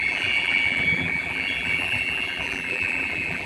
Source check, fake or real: fake